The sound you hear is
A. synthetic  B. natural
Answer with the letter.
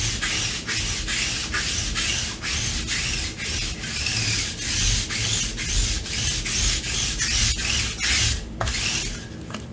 B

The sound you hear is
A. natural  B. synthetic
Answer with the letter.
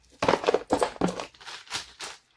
A